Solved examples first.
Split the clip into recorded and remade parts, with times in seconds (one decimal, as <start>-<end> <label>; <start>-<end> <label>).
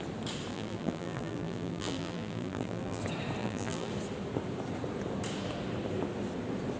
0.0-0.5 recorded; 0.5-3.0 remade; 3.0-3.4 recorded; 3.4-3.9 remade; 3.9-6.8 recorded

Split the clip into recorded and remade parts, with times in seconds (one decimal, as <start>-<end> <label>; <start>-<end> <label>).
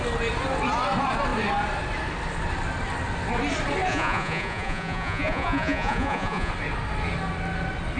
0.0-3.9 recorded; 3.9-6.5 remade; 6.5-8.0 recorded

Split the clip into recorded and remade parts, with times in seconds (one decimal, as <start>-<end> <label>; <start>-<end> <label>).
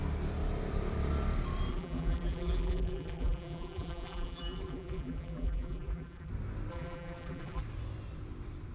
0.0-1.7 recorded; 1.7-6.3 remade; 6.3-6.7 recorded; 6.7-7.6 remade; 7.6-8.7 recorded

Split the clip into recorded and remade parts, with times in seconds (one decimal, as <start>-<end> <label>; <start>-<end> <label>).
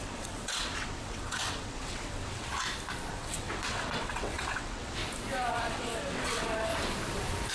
0.0-2.5 remade; 2.5-3.1 recorded; 3.1-5.0 remade; 5.0-5.5 recorded; 5.5-6.7 remade; 6.7-7.5 recorded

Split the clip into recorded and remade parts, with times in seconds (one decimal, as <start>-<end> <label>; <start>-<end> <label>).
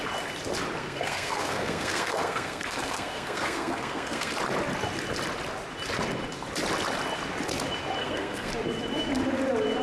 0.0-0.8 recorded; 0.8-4.3 remade; 4.3-8.0 recorded; 8.0-8.5 remade; 8.5-9.8 recorded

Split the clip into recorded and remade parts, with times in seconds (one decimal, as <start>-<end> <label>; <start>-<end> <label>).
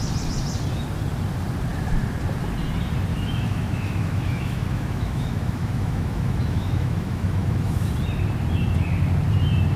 0.0-3.1 recorded; 3.1-7.9 remade; 7.9-9.8 recorded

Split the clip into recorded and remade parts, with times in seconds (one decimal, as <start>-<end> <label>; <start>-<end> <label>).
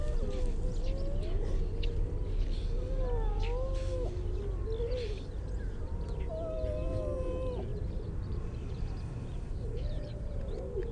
0.0-7.7 recorded; 7.7-10.4 remade; 10.4-10.9 recorded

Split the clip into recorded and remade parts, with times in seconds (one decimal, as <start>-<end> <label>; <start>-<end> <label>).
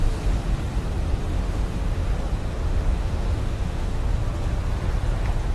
0.0-1.3 recorded; 1.3-2.1 remade; 2.1-2.5 recorded; 2.5-4.2 remade; 4.2-5.5 recorded